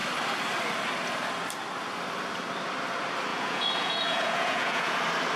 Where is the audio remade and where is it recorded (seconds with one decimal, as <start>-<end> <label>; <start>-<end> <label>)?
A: 0.0-3.3 recorded; 3.3-5.0 remade; 5.0-5.4 recorded